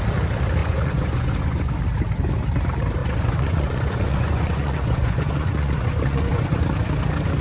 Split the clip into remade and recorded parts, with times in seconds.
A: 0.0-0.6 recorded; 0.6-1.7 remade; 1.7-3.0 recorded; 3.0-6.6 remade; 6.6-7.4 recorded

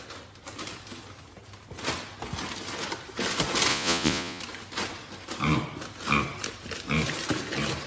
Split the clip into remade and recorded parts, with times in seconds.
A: 0.0-3.7 recorded; 3.7-4.4 remade; 4.4-7.9 recorded

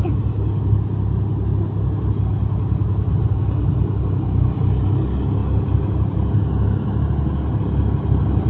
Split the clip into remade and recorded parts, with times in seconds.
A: 0.0-8.5 recorded

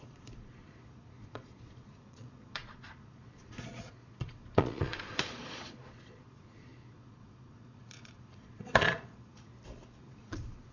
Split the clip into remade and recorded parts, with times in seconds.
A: 0.0-9.5 remade; 9.5-10.0 recorded; 10.0-10.7 remade

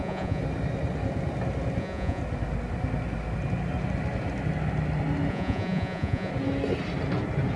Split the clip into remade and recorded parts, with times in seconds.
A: 0.0-0.4 remade; 0.4-1.8 recorded; 1.8-2.2 remade; 2.2-5.3 recorded; 5.3-6.3 remade; 6.3-7.6 recorded